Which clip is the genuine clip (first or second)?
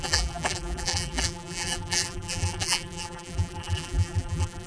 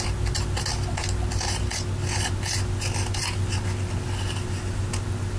second